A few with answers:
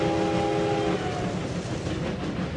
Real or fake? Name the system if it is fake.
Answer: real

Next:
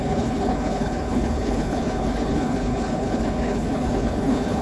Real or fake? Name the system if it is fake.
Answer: fake, codec, HILCodec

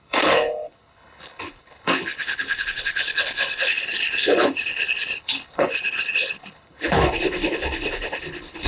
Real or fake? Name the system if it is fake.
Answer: fake, codec, HILCodec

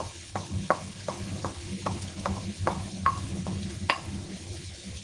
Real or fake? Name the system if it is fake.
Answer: fake, codec, HILCodec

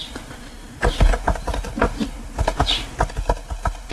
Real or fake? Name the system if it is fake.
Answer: real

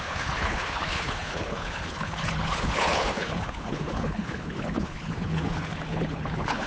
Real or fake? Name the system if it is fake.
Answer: fake, codec, HILCodec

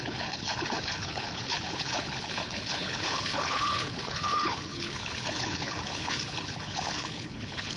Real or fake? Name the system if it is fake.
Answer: fake, codec, HILCodec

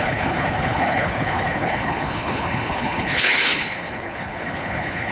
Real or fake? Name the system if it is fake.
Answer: fake, codec, HILCodec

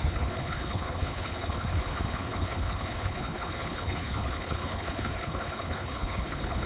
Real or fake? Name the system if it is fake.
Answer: fake, codec, HILCodec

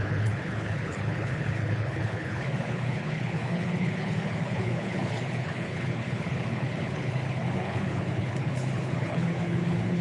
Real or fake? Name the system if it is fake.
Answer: fake, codec, HILCodec